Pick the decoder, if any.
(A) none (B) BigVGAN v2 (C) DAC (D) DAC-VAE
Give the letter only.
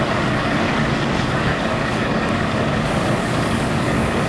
C